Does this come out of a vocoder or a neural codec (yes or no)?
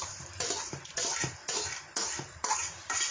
yes